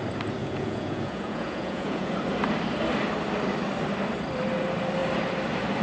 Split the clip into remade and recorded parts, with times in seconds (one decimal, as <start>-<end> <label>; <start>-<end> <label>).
0.0-0.4 recorded; 0.4-2.1 remade; 2.1-5.8 recorded

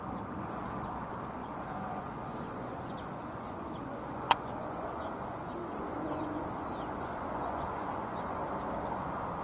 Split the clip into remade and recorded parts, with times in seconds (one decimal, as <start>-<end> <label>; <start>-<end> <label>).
0.0-8.4 remade; 8.4-8.9 recorded; 8.9-9.4 remade

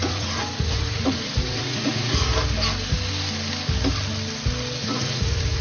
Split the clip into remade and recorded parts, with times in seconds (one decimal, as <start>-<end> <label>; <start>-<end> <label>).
0.0-2.3 remade; 2.3-4.8 recorded; 4.8-5.6 remade

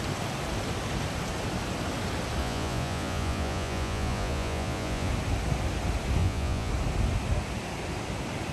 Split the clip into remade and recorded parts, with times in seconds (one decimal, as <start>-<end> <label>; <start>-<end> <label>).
0.0-2.4 recorded; 2.4-5.1 remade; 5.1-6.2 recorded; 6.2-6.7 remade; 6.7-8.5 recorded

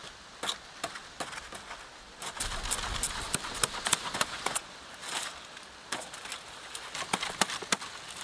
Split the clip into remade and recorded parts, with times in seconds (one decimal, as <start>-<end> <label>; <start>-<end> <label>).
0.0-3.9 recorded; 3.9-4.8 remade; 4.8-8.2 recorded

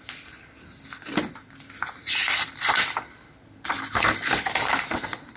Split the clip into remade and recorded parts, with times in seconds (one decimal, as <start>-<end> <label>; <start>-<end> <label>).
0.0-5.4 recorded

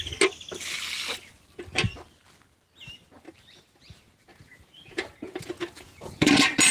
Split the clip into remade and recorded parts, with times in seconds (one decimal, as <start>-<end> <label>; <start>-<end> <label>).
0.0-4.3 recorded; 4.3-6.3 remade; 6.3-6.7 recorded